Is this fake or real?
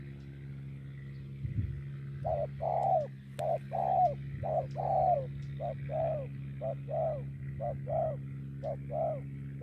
real